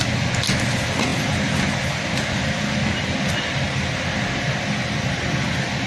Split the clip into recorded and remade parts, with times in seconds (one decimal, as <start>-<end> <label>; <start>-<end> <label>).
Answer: 0.0-5.9 recorded